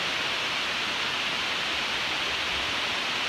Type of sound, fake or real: real